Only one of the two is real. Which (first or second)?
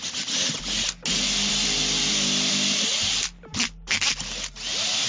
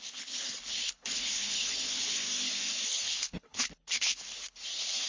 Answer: first